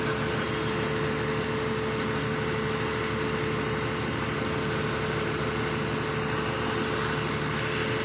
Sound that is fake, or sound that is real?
real